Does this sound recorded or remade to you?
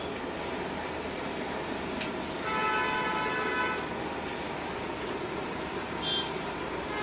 recorded